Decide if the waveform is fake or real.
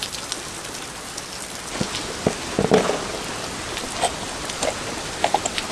real